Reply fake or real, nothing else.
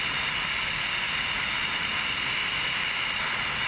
real